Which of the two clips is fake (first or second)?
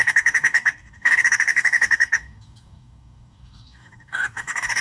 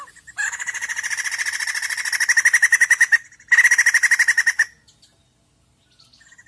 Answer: first